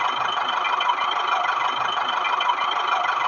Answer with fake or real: real